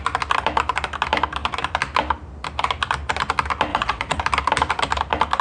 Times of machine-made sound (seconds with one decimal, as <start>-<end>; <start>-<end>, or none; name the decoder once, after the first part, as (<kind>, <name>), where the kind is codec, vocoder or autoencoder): 3.7-4.2 (vocoder, WaveNeXt)